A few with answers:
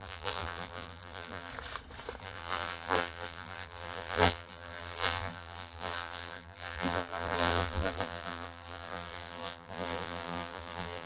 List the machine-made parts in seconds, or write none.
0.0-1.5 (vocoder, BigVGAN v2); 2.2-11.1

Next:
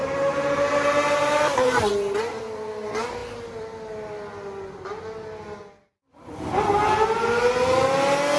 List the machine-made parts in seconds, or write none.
0.0-1.9 (vocoder, BigVGAN v2)

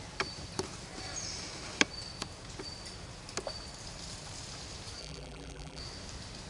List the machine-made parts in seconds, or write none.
5.0-5.8 (vocoder, BigVGAN v2)

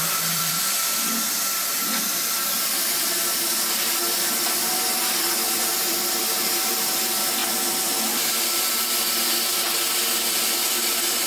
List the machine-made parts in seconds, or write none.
0.0-7.4 (vocoder, BigVGAN v2); 10.5-11.3

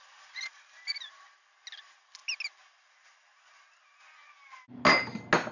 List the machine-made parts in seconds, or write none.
none

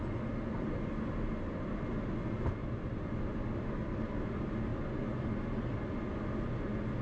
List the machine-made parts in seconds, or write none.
2.6-4.2 (vocoder, BigVGAN v2); 4.7-6.0